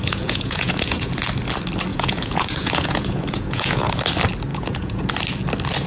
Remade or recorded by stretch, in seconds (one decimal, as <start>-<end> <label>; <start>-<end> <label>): 0.0-1.1 remade; 1.1-1.9 recorded; 1.9-3.9 remade; 3.9-4.5 recorded; 4.5-5.0 remade; 5.0-5.9 recorded